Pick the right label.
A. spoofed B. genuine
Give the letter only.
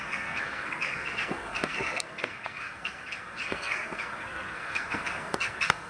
A